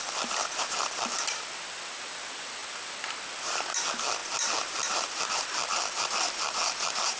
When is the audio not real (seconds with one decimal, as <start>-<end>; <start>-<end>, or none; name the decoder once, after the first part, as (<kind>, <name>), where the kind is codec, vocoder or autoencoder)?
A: none